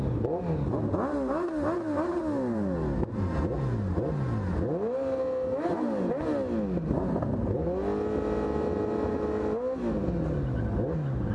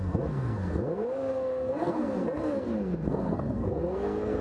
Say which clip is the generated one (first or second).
second